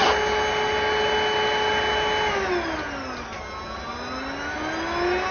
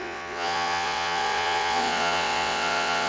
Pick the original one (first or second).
first